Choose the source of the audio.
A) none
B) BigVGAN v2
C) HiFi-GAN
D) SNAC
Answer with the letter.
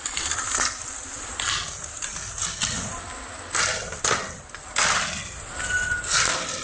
A